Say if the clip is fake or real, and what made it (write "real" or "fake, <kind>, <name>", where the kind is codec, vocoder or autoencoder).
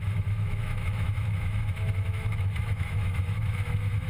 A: fake, autoencoder, DAC-VAE